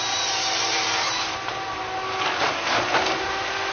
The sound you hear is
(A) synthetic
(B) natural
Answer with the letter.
B